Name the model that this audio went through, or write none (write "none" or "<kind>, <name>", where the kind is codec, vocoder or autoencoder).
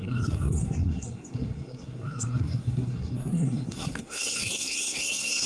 codec, SNAC